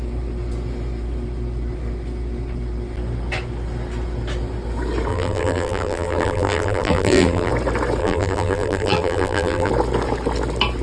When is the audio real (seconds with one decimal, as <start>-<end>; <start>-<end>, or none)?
0.0-5.1; 7.5-8.0; 9.7-10.8